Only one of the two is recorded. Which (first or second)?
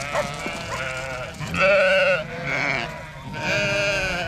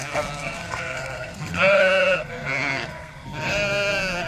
first